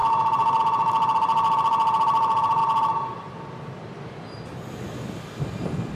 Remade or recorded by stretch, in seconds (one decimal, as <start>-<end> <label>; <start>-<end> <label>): 0.0-6.0 recorded